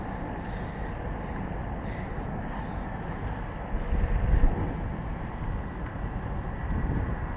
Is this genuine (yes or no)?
yes